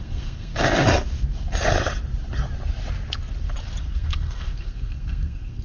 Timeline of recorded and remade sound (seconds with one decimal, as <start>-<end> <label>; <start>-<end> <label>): 0.0-0.5 remade; 0.5-3.8 recorded; 3.8-5.6 remade